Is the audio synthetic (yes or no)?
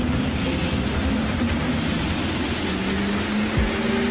no